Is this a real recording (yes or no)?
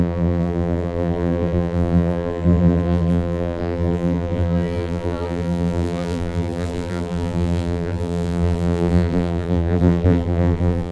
no